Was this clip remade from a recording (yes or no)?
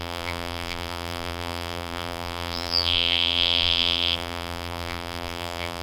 yes